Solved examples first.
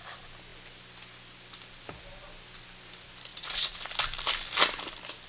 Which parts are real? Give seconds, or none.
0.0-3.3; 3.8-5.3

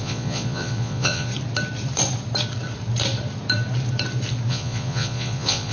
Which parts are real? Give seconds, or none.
1.3-4.5

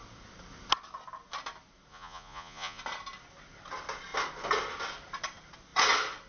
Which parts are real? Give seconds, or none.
0.0-1.9; 2.8-6.3